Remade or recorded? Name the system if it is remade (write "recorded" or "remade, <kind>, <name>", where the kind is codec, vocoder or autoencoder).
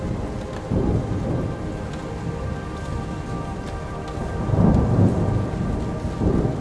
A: recorded